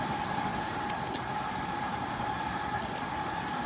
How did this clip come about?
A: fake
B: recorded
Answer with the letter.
B